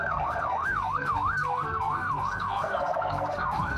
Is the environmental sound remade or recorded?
remade